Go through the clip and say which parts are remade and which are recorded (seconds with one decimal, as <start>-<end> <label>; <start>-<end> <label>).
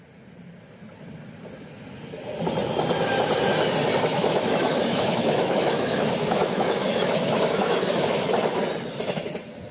0.0-4.1 recorded; 4.1-8.6 remade; 8.6-9.7 recorded